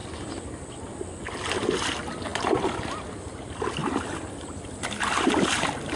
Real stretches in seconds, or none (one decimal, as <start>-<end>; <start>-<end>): 0.0-6.0